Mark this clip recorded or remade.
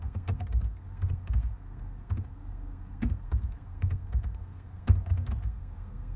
remade